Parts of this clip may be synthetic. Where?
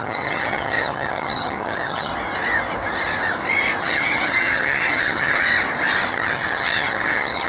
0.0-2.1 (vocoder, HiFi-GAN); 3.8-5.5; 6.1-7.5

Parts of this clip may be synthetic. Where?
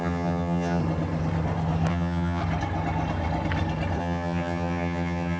0.0-0.8 (vocoder, HiFi-GAN); 1.9-2.4; 4.0-5.4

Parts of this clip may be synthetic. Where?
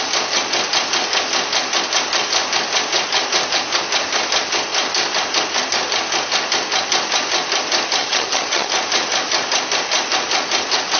8.0-8.7 (vocoder, HiFi-GAN)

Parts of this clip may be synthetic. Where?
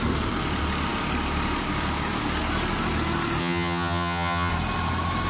3.4-4.5 (vocoder, HiFi-GAN)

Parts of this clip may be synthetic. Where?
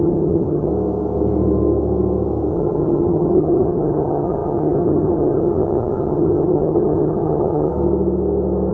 0.0-0.7 (vocoder, HiFi-GAN); 2.5-7.7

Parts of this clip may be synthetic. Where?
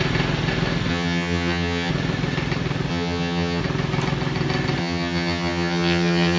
0.9-1.9 (vocoder, HiFi-GAN); 2.9-3.6; 4.8-6.4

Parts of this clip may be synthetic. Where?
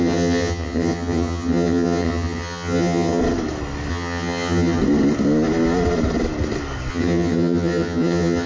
0.0-3.2 (vocoder, HiFi-GAN); 3.9-4.8; 6.9-8.5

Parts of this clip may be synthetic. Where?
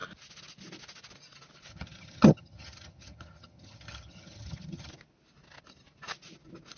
1.7-4.9 (vocoder, HiFi-GAN)